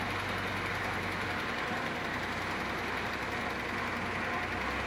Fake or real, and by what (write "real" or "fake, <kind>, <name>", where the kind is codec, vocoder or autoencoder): real